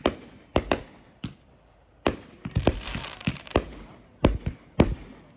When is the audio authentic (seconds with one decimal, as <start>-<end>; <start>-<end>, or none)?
0.0-0.5; 3.7-5.4